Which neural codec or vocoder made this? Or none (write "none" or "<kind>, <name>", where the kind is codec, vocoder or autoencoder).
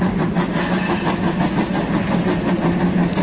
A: none